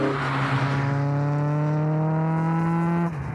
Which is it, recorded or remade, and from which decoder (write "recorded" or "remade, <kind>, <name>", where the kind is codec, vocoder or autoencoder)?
recorded